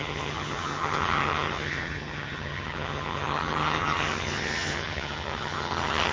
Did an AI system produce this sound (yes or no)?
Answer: yes